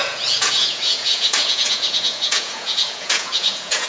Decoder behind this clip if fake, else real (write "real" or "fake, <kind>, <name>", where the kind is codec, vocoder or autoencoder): fake, vocoder, Vocos